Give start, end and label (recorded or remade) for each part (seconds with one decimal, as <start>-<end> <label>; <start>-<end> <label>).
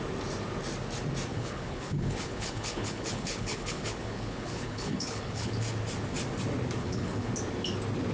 0.0-1.3 recorded; 1.3-5.5 remade; 5.5-6.8 recorded; 6.8-7.3 remade; 7.3-8.1 recorded